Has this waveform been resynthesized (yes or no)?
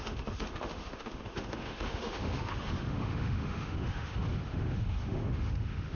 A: yes